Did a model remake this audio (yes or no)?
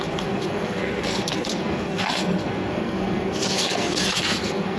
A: yes